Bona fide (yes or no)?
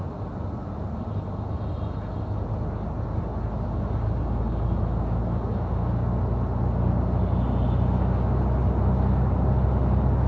yes